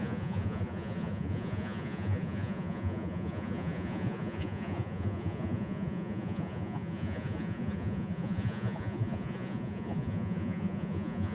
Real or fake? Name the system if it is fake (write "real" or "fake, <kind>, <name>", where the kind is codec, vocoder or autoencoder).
fake, vocoder, Vocos